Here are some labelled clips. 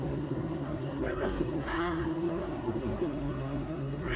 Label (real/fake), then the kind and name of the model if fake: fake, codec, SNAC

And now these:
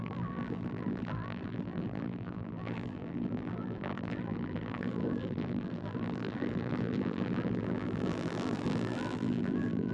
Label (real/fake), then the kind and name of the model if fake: fake, vocoder, BigVGAN v2